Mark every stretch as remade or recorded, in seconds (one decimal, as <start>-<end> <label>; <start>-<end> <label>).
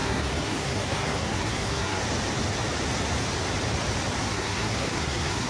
0.0-2.0 remade; 2.0-4.2 recorded; 4.2-5.5 remade